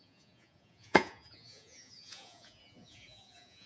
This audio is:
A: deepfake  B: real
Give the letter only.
A